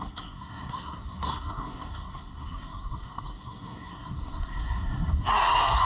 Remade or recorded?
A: remade